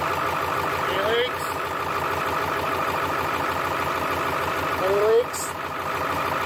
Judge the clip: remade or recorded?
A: recorded